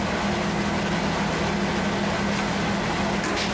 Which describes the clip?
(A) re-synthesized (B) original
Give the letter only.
B